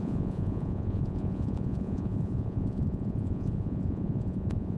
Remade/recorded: remade